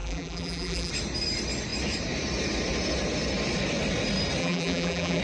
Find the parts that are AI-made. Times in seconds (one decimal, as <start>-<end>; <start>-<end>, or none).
0.0-0.9; 4.4-5.2